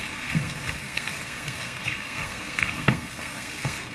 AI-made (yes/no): yes